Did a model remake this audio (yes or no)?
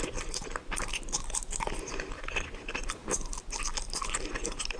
no